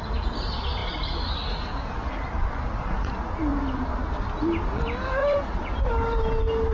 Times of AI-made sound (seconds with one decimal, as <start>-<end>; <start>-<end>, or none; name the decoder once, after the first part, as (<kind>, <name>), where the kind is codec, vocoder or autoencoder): 3.5-4.3 (vocoder, BigVGAN v2); 5.2-5.9